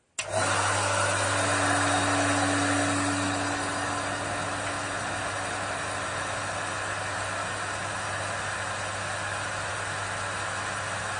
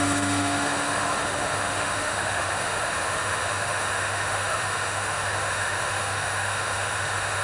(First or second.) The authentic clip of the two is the first